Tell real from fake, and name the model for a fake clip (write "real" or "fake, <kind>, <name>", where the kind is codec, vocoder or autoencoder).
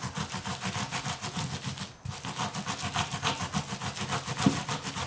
real